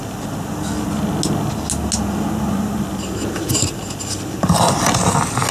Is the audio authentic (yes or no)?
yes